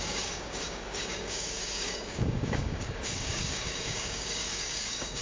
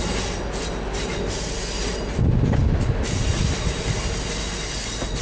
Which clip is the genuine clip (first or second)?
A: second